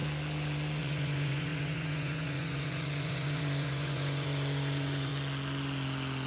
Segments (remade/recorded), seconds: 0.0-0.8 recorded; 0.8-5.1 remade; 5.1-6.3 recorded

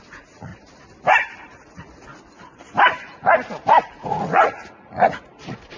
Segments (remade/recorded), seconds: 0.0-0.5 remade; 0.5-1.7 recorded; 1.7-2.1 remade; 2.1-3.9 recorded; 3.9-5.8 remade

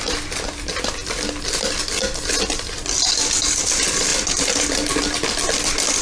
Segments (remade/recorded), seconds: 0.0-6.0 recorded

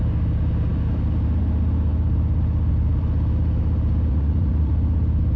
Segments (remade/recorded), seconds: 0.0-4.1 recorded; 4.1-4.7 remade; 4.7-5.4 recorded

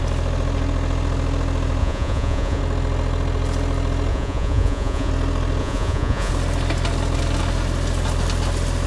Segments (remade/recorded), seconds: 0.0-1.8 recorded; 1.8-2.6 remade; 2.6-4.1 recorded; 4.1-5.1 remade; 5.1-5.6 recorded; 5.6-6.3 remade; 6.3-8.9 recorded

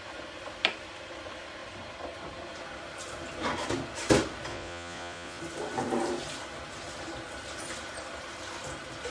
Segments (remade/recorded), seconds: 0.0-4.5 recorded; 4.5-5.4 remade; 5.4-9.1 recorded

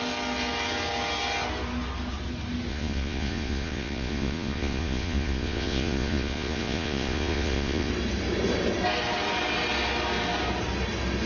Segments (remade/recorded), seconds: 0.0-2.7 recorded; 2.7-7.9 remade; 7.9-11.3 recorded

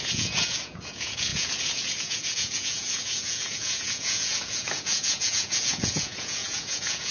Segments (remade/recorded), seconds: 0.0-7.1 remade